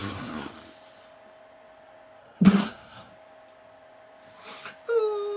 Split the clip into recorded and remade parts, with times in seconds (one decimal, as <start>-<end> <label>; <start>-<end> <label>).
0.0-0.5 remade; 0.5-2.2 recorded; 2.2-3.1 remade; 3.1-5.4 recorded